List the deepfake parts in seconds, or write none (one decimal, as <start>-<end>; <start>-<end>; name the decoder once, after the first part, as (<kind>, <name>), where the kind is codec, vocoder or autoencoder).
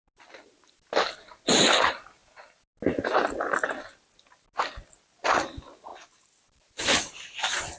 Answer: 5.9-7.8 (vocoder, BigVGAN v2)